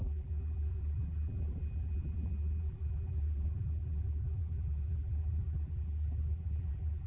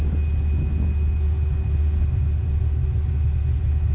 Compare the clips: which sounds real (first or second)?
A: second